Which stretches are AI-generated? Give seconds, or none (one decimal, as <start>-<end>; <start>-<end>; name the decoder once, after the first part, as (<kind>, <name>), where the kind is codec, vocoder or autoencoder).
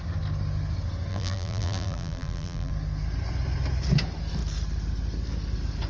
1.1-2.7 (vocoder, BigVGAN v2)